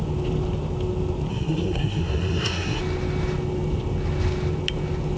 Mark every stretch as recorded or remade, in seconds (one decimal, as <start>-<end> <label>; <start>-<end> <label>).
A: 0.0-1.3 recorded; 1.3-2.8 remade; 2.8-5.2 recorded